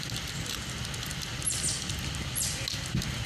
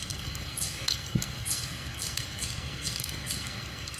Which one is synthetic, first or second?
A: second